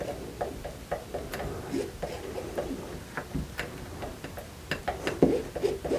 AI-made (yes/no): no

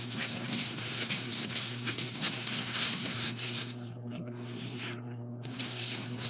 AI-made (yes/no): yes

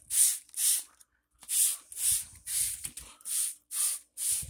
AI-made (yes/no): no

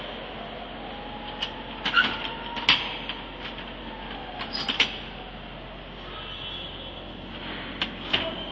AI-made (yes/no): no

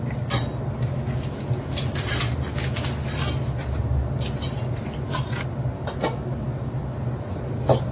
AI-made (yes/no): no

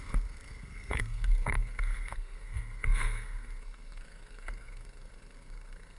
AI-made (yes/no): yes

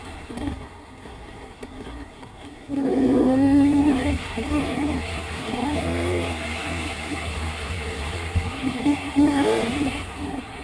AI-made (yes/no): yes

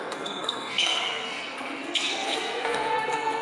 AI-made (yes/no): yes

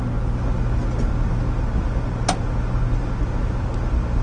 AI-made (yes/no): no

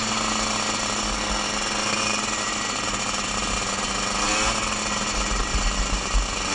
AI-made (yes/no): no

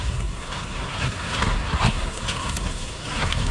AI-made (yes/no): yes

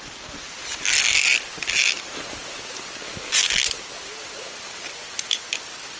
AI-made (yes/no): no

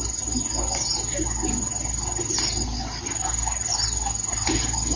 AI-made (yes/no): no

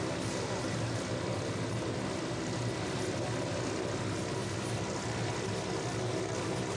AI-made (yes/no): no